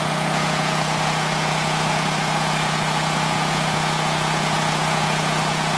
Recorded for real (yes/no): no